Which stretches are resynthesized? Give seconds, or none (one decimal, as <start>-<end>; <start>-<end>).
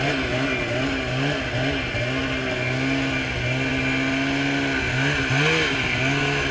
none